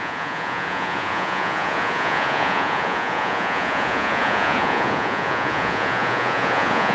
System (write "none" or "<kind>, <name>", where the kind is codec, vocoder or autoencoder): vocoder, Vocos